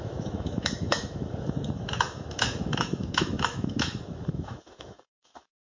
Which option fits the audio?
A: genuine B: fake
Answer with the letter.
B